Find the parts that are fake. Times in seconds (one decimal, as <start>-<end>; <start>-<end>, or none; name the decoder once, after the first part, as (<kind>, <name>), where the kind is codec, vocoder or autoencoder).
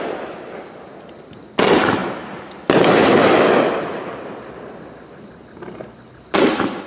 none